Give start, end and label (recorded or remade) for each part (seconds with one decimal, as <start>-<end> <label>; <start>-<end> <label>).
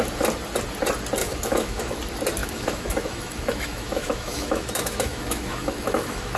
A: 0.0-1.2 recorded; 1.2-2.0 remade; 2.0-2.4 recorded; 2.4-6.4 remade